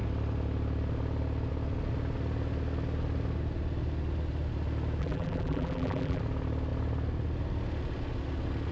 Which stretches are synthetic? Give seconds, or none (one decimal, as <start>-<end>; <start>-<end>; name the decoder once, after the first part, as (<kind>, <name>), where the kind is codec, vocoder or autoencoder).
5.0-6.2 (vocoder, BigVGAN v2)